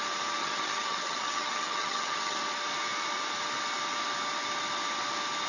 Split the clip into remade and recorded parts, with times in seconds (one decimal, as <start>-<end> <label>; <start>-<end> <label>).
0.0-0.4 recorded; 0.4-2.4 remade; 2.4-5.5 recorded